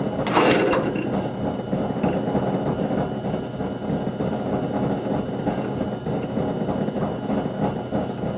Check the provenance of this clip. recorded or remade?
recorded